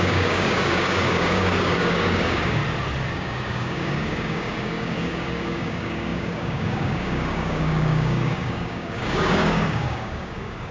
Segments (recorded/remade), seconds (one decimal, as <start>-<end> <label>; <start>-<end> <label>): 0.0-2.6 remade; 2.6-3.1 recorded; 3.1-10.7 remade